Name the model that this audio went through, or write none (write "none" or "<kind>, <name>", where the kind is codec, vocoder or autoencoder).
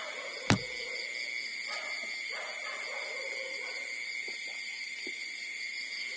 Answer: none